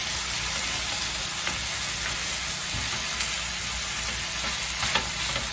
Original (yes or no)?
yes